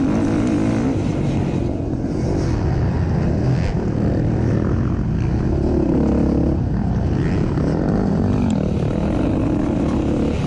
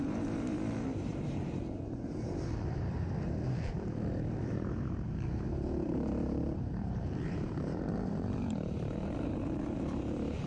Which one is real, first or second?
first